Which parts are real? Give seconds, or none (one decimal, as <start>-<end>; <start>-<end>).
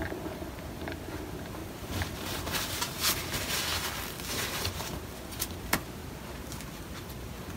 1.6-2.9; 3.7-4.4; 6.0-6.8